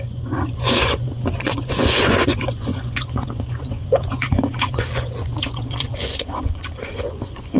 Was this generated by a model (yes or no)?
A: yes